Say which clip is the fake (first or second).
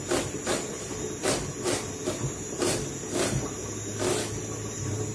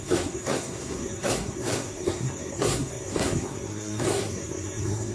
second